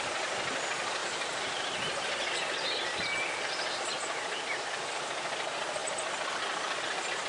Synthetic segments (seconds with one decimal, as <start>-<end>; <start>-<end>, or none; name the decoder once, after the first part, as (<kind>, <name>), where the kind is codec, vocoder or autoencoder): none